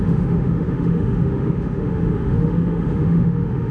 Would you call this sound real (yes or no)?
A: no